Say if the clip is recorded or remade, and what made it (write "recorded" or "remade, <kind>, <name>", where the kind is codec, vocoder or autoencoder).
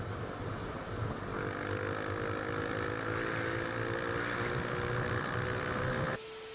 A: recorded